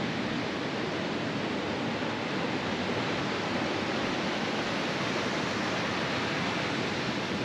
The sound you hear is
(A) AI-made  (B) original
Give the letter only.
B